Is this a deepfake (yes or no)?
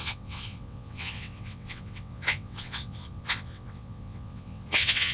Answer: yes